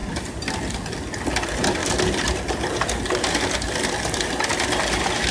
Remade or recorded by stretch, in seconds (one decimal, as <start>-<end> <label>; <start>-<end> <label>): 0.0-5.3 recorded